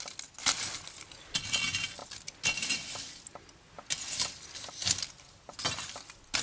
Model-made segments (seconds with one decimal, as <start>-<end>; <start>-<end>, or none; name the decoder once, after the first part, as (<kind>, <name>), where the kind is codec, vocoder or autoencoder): none